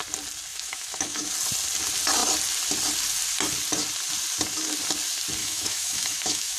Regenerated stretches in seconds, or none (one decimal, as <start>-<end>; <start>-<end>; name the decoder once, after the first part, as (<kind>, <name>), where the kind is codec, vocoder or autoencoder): 0.5-1.3 (autoencoder, DAC-VAE); 5.4-6.6